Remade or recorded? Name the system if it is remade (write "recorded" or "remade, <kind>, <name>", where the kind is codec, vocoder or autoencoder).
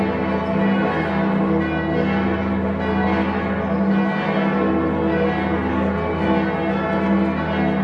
recorded